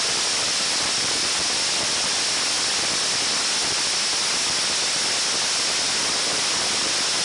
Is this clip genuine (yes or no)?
yes